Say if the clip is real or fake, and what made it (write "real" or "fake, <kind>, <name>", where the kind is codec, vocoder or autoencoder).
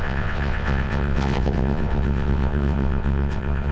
fake, vocoder, WaveNeXt